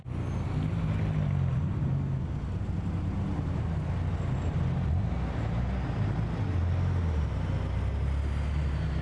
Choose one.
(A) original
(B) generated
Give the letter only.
A